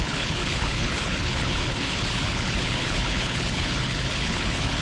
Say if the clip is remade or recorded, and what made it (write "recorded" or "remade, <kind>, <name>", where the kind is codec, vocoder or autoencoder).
remade, codec, HILCodec